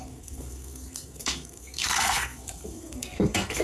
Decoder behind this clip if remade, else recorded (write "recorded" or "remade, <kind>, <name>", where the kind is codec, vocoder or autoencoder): remade, codec, SNAC